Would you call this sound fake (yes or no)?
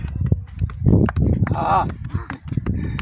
no